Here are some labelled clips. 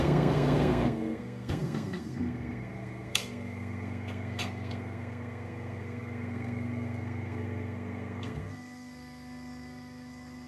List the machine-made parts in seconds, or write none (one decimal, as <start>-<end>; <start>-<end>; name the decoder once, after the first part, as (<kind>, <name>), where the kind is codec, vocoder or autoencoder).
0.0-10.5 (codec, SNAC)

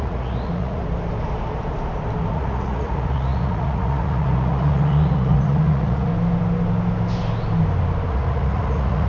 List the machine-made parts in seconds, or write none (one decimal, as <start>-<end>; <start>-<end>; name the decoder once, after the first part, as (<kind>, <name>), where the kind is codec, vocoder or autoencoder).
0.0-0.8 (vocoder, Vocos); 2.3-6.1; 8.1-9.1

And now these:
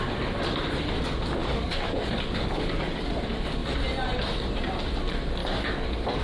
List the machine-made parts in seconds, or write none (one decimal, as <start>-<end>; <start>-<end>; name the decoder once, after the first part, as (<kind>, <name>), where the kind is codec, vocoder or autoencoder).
1.4-3.1 (codec, DAC); 5.4-6.2

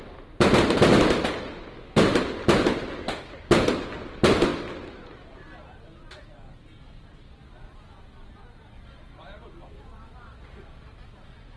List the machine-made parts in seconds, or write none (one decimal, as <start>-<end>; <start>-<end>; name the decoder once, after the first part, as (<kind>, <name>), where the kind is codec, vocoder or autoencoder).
none

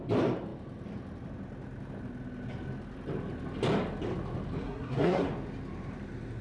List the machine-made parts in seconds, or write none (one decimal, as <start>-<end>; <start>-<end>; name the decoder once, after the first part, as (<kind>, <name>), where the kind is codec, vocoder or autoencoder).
4.6-5.3 (codec, SNAC)

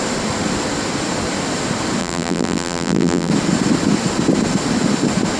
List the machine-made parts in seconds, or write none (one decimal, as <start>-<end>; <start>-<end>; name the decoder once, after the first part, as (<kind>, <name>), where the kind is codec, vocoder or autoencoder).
2.0-3.3 (vocoder, BigVGAN v2)

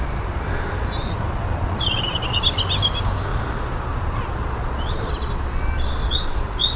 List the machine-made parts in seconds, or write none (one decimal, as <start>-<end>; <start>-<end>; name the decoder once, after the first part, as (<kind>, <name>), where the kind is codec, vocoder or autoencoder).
1.0-2.4 (vocoder, Vocos); 3.3-5.1; 6.0-6.8